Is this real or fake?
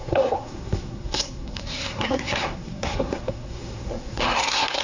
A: fake